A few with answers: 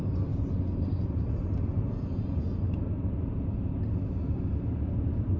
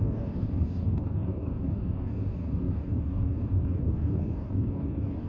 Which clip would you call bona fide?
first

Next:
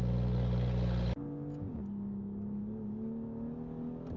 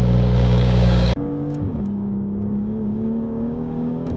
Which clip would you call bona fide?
first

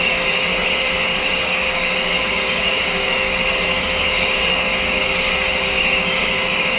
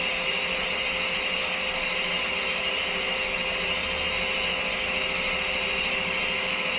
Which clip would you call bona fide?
second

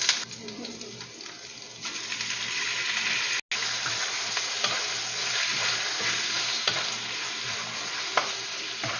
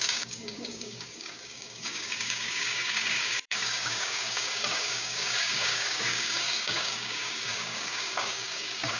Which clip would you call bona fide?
first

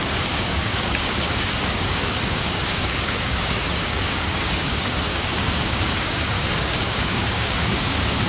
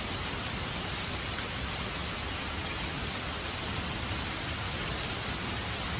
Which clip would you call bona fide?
second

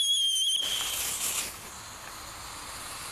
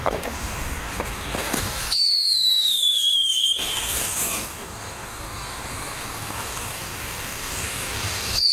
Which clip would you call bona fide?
first